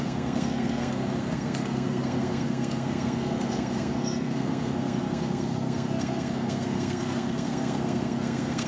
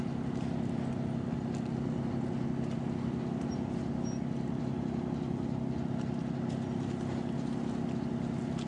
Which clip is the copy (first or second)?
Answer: first